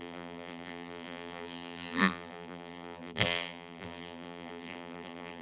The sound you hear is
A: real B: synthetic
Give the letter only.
B